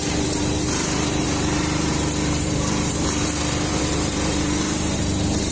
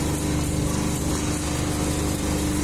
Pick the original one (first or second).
second